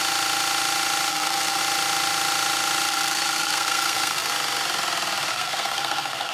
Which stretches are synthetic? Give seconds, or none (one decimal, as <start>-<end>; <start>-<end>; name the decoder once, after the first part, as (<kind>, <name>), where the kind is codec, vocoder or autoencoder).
1.1-1.6 (codec, SNAC); 2.9-4.3; 5.3-6.3